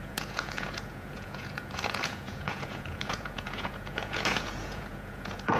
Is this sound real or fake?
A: fake